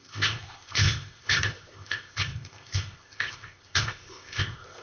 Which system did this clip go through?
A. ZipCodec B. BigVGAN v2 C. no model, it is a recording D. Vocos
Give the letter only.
A